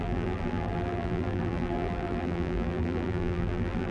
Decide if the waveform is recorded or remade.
remade